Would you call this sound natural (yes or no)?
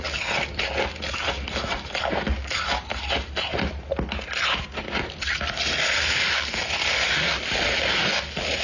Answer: yes